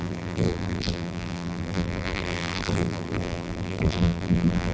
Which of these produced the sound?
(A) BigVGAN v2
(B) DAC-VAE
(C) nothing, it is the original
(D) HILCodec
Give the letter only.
A